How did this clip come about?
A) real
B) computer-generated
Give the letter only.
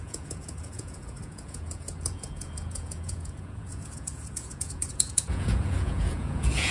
B